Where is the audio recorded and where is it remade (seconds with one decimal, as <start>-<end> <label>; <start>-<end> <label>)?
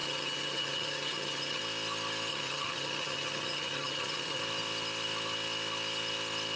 0.0-1.6 remade; 1.6-2.3 recorded; 2.3-4.4 remade; 4.4-6.6 recorded